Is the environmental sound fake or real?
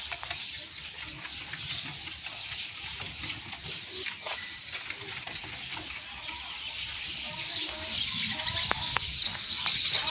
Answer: real